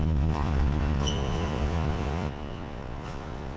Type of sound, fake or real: fake